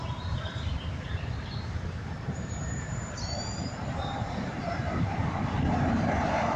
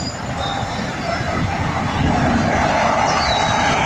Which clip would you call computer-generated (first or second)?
first